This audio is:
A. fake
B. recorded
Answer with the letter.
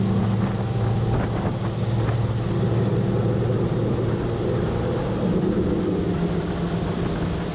B